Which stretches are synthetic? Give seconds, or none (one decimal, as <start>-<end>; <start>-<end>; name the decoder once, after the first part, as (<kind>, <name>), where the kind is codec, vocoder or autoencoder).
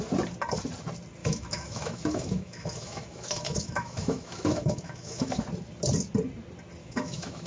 1.2-5.4 (autoencoder, DAC-VAE); 6.8-7.5